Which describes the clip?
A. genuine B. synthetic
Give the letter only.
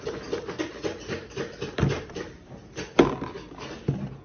A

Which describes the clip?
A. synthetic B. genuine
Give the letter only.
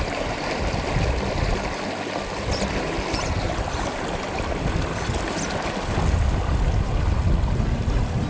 B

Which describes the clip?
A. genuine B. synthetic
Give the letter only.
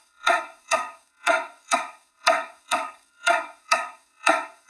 B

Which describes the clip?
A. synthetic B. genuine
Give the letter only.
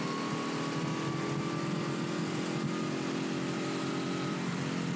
B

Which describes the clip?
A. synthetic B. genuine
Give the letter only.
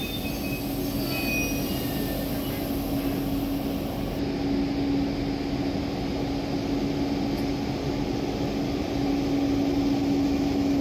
B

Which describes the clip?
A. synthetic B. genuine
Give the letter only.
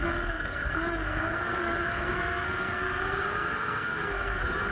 A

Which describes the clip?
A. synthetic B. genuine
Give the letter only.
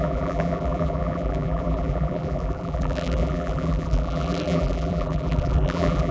A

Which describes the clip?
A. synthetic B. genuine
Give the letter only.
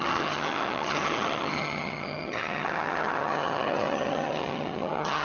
A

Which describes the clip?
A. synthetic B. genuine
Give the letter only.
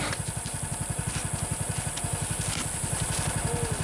B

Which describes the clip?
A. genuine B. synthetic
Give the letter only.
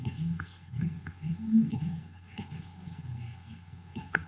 B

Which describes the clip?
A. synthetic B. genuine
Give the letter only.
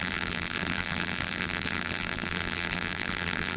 A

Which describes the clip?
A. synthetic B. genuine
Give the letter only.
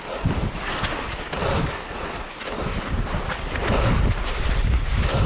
B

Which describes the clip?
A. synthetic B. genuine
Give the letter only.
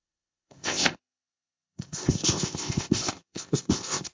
A